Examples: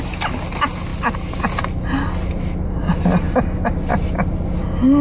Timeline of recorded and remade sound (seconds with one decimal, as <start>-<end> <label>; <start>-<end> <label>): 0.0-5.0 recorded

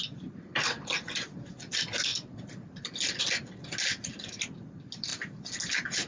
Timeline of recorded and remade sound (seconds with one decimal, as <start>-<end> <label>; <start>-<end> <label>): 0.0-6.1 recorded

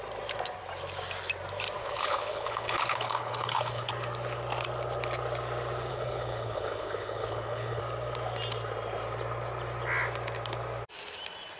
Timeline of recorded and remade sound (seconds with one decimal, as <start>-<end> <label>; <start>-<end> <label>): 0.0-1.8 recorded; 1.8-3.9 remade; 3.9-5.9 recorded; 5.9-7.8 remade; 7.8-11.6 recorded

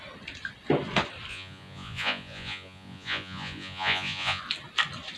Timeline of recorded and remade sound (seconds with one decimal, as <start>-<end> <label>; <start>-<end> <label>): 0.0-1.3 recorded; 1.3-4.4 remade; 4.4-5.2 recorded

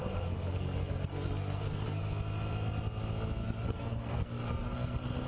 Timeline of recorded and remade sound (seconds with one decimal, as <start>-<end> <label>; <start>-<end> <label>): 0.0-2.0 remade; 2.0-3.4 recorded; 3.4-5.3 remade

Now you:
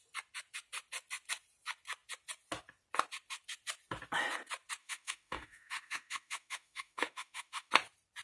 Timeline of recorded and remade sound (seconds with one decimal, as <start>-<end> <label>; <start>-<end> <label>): 0.0-4.8 recorded; 4.8-7.7 remade; 7.7-8.2 recorded

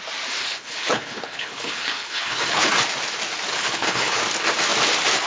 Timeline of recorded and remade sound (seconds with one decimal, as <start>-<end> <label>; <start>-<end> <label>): 0.0-0.4 recorded; 0.4-2.7 remade; 2.7-3.5 recorded; 3.5-4.2 remade; 4.2-5.3 recorded